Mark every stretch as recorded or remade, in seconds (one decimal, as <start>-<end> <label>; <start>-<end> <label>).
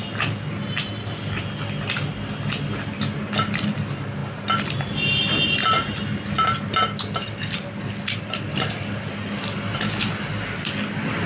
0.0-11.3 recorded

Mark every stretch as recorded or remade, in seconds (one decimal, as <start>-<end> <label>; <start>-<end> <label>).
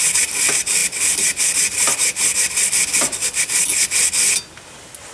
0.0-5.1 recorded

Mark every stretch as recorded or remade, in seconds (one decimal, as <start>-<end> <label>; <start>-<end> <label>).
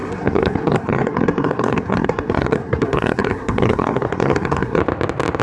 0.0-4.8 remade; 4.8-5.4 recorded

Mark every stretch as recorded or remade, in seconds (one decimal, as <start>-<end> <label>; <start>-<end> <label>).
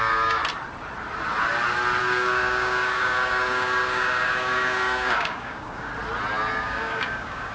0.0-0.4 remade; 0.4-2.0 recorded; 2.0-5.9 remade; 5.9-6.6 recorded; 6.6-7.5 remade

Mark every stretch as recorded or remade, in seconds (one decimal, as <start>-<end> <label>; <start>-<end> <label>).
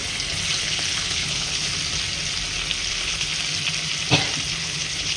0.0-0.6 recorded; 0.6-1.7 remade; 1.7-2.9 recorded; 2.9-3.3 remade; 3.3-4.5 recorded; 4.5-5.2 remade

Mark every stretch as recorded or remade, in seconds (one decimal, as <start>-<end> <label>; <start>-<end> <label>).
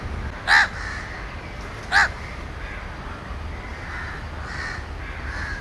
0.0-5.6 recorded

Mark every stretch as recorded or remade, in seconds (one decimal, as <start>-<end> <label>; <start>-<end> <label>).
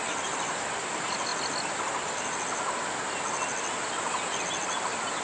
0.0-5.2 recorded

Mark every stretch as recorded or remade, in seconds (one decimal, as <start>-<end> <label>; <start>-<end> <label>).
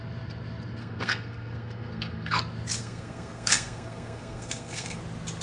0.0-0.8 recorded; 0.8-2.4 remade; 2.4-2.8 recorded; 2.8-5.0 remade; 5.0-5.4 recorded